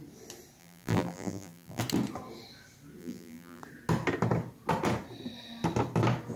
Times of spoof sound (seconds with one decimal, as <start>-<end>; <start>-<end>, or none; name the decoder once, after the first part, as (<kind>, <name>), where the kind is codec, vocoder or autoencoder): 0.6-1.8 (vocoder, BigVGAN v2); 3.0-3.6